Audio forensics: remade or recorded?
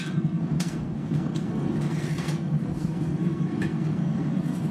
remade